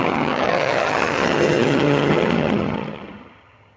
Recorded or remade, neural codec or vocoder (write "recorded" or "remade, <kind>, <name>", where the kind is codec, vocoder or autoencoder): remade, vocoder, HiFi-GAN